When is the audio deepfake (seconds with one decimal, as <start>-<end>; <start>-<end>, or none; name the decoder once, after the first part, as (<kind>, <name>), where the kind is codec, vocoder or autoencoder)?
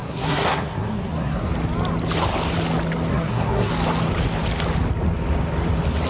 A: 0.0-1.5 (codec, SNAC); 3.1-3.7